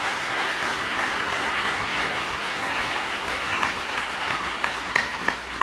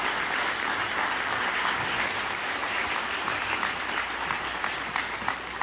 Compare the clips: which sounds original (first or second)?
second